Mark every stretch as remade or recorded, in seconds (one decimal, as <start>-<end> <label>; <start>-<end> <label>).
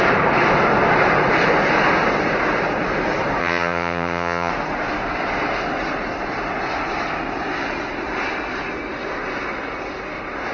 0.0-3.4 recorded; 3.4-4.5 remade; 4.5-10.5 recorded